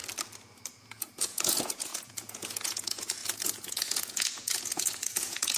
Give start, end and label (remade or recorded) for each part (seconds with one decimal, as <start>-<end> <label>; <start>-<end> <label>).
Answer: 0.0-0.8 recorded; 0.8-5.6 remade